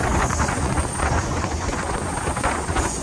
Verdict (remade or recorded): remade